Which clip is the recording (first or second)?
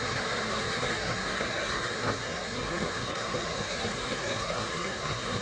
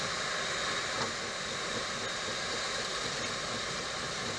second